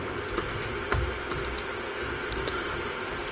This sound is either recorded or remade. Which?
recorded